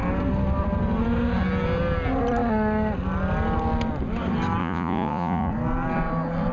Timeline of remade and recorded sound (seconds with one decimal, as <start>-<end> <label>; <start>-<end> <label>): 0.0-4.6 recorded; 4.6-5.5 remade; 5.5-6.5 recorded